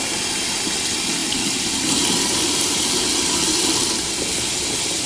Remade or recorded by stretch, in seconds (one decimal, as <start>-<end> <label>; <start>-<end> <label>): 0.0-5.1 recorded